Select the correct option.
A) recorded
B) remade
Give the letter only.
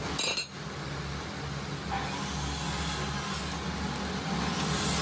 A